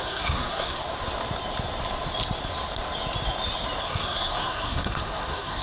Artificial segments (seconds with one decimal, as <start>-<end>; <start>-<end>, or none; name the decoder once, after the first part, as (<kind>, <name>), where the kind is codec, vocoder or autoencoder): 0.0-0.8 (codec, SNAC); 3.8-5.6